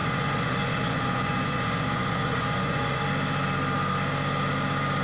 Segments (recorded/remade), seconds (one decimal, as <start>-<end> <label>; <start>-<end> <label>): 0.0-3.0 remade; 3.0-5.0 recorded